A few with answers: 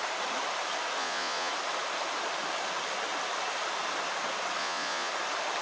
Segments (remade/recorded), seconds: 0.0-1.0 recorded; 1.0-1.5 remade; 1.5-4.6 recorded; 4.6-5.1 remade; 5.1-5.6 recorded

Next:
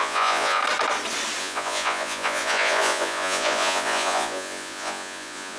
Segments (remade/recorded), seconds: 0.0-0.6 remade; 0.6-1.4 recorded; 1.4-5.6 remade

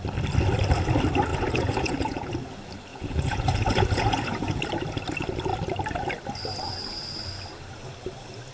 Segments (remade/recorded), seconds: 0.0-1.3 recorded; 1.3-2.3 remade; 2.3-2.9 recorded; 2.9-4.6 remade; 4.6-8.5 recorded